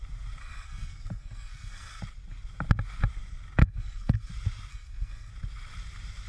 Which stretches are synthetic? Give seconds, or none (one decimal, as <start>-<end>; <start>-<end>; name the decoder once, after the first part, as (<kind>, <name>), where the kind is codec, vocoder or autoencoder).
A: 0.4-2.0 (codec, SNAC); 3.6-4.3; 4.7-5.3